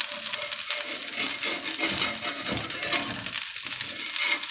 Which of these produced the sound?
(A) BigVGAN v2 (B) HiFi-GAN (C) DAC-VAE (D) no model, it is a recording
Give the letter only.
D